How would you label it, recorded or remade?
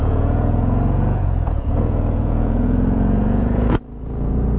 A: remade